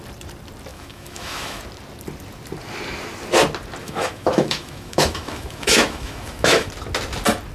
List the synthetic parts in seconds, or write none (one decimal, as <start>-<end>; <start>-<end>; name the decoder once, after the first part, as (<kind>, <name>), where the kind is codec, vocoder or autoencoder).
0.7-1.6 (autoencoder, DAC-VAE); 3.8-6.7